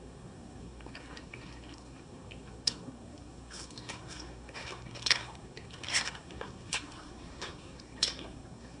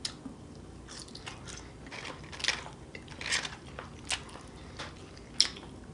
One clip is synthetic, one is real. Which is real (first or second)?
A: second